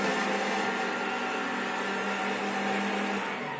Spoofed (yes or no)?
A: no